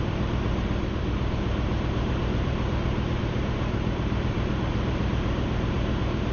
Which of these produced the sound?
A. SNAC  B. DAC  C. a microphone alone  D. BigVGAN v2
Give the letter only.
D